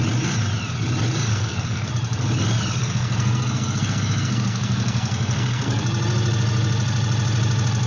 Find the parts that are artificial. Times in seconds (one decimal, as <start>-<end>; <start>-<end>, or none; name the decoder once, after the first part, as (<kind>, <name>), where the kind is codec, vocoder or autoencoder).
1.3-1.9 (codec, SNAC); 2.8-5.8